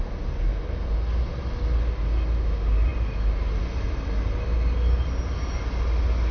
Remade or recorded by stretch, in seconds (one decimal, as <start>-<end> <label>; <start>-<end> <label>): 0.0-6.3 recorded